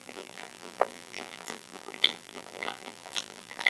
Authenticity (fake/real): fake